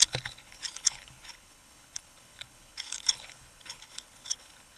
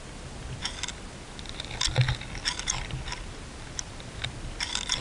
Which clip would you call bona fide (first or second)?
second